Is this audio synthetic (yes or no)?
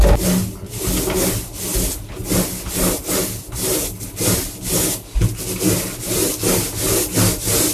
no